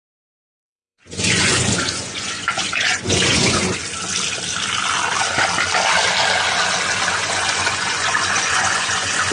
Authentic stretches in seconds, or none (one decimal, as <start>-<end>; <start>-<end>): 3.8-7.1